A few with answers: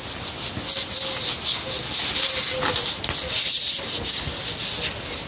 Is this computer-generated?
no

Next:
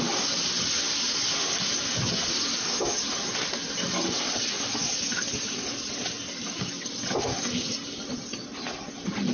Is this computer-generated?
no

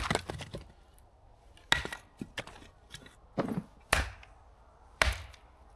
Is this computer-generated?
no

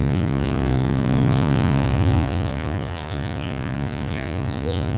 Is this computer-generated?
yes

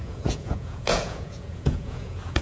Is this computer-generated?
yes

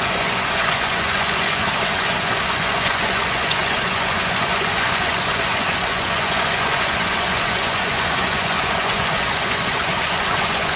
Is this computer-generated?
yes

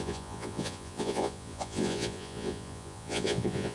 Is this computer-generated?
yes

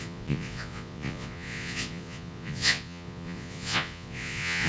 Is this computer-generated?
yes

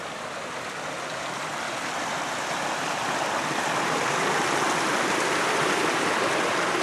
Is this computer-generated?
no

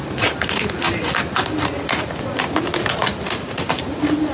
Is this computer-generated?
no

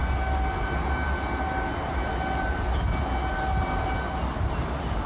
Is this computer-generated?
no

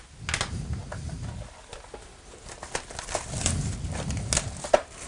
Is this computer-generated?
no